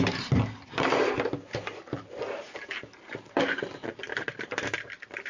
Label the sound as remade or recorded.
remade